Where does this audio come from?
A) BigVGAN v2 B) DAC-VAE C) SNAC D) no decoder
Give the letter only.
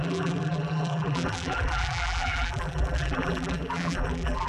A